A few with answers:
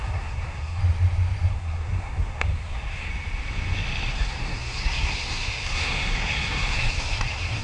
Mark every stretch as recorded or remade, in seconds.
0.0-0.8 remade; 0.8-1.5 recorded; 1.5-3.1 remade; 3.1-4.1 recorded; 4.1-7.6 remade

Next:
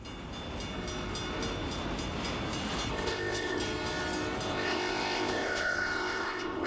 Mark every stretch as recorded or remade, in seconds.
0.0-2.9 recorded; 2.9-3.6 remade; 3.6-4.5 recorded; 4.5-6.7 remade